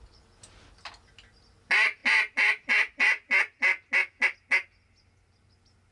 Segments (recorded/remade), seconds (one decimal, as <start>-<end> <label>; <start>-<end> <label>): 0.0-5.9 recorded